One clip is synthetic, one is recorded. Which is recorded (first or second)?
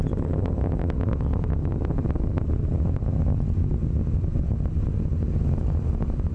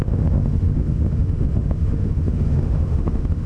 first